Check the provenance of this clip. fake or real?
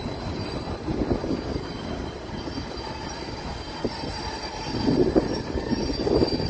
real